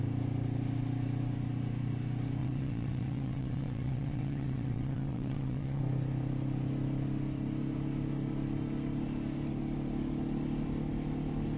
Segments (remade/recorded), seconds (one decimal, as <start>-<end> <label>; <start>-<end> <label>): 0.0-2.4 recorded; 2.4-5.8 remade; 5.8-11.6 recorded